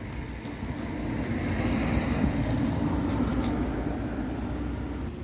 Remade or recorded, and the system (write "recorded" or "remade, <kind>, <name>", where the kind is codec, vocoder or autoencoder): recorded